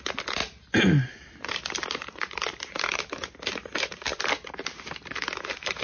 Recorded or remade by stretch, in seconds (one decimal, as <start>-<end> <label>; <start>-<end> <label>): 0.0-0.4 remade; 0.4-1.0 recorded; 1.0-5.8 remade